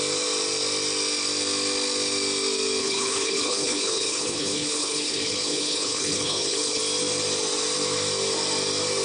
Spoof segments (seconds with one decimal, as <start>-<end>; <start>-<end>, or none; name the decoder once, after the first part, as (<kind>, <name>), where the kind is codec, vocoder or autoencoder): 2.8-6.8 (codec, HILCodec)

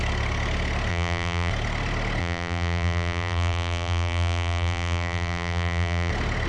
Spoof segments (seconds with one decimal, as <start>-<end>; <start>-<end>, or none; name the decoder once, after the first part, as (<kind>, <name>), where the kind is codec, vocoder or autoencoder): 0.9-1.5 (vocoder, BigVGAN v2); 2.2-6.1

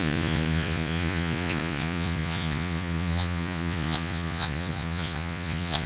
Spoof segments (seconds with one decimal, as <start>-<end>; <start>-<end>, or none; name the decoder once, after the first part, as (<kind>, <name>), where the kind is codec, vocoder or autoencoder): 0.0-5.9 (vocoder, Vocos)

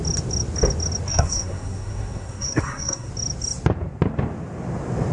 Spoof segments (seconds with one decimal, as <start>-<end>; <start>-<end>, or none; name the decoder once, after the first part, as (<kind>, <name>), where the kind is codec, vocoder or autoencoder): 1.1-3.1 (codec, SNAC)

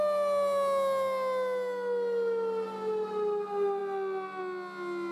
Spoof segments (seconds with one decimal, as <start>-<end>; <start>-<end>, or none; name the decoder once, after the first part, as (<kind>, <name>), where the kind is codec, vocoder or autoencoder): none

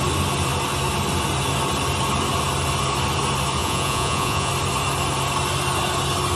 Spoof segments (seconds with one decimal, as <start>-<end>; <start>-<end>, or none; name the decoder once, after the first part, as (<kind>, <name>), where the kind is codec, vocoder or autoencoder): 3.6-4.5 (vocoder, Vocos)

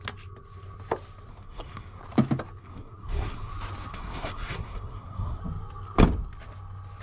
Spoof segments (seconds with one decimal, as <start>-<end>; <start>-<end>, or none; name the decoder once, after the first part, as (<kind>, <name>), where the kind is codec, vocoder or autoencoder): 1.3-2.0 (codec, SNAC); 2.6-3.5; 3.9-5.4

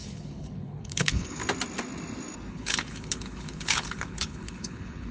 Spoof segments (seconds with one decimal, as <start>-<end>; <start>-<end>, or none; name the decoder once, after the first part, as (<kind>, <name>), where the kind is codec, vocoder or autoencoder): 0.0-1.4 (codec, HILCodec); 2.5-5.1